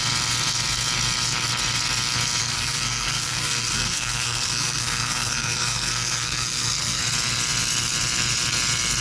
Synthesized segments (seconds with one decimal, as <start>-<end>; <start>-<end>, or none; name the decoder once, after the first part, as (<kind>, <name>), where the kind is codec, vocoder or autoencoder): 2.4-7.0 (codec, SNAC)